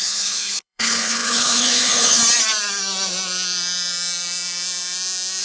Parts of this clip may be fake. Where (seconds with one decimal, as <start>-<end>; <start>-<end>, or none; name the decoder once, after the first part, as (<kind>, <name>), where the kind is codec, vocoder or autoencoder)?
0.0-2.2 (codec, HILCodec)